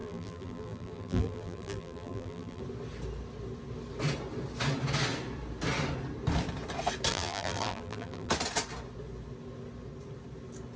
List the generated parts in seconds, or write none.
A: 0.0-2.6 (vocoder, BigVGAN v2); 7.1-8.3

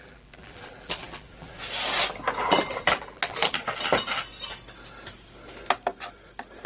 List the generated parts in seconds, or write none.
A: 0.0-1.5 (vocoder, BigVGAN v2); 2.4-3.6

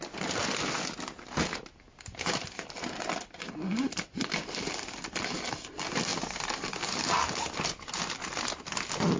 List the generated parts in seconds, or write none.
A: none

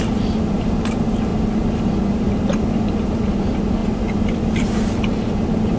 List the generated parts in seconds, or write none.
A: 3.8-4.4 (vocoder, BigVGAN v2)